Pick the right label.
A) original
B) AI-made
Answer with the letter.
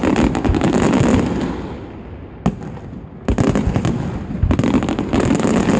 A